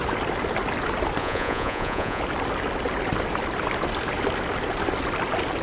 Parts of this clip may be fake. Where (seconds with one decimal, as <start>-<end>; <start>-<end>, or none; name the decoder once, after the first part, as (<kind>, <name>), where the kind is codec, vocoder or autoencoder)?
1.2-2.2 (vocoder, Vocos)